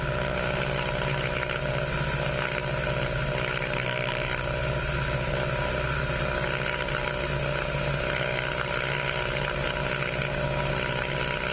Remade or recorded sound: recorded